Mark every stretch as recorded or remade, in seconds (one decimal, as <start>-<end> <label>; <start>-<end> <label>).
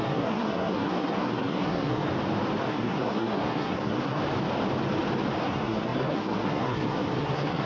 0.0-2.1 remade; 2.1-2.7 recorded; 2.7-4.2 remade; 4.2-5.4 recorded; 5.4-7.7 remade